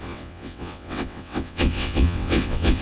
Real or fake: fake